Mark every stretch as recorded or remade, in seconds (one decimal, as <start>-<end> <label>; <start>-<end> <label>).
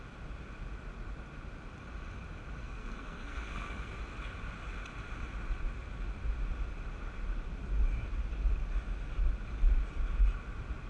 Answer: 0.0-2.6 recorded; 2.6-4.0 remade; 4.0-10.9 recorded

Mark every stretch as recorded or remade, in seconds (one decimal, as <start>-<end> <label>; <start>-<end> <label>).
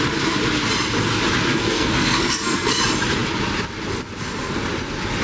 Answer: 0.0-1.5 recorded; 1.5-2.8 remade; 2.8-5.2 recorded